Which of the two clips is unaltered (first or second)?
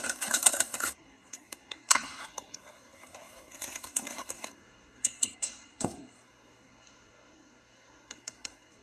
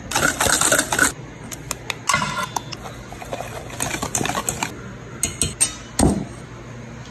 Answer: second